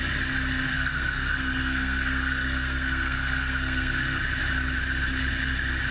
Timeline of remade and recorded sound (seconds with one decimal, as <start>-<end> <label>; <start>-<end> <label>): 0.0-0.7 recorded; 0.7-4.2 remade; 4.2-5.9 recorded